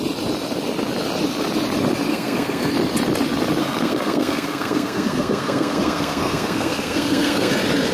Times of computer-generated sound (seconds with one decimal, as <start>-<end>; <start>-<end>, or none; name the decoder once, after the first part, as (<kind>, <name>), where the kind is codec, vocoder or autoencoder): 2.1-2.7 (codec, SNAC); 3.6-7.5